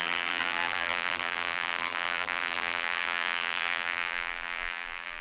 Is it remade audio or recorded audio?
remade